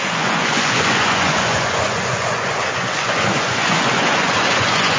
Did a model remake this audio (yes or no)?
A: yes